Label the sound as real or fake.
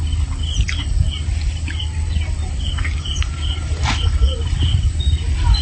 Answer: real